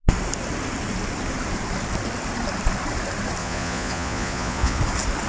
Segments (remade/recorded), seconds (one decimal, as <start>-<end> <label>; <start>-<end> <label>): 0.0-3.4 recorded; 3.4-4.8 remade; 4.8-5.3 recorded